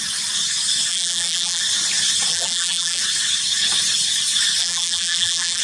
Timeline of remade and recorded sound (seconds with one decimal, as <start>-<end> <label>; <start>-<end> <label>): 0.0-0.9 recorded; 0.9-1.6 remade; 1.6-2.3 recorded; 2.3-3.0 remade; 3.0-4.6 recorded; 4.6-5.6 remade